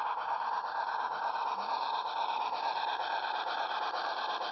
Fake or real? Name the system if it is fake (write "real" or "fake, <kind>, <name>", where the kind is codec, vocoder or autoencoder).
fake, vocoder, BigVGAN v2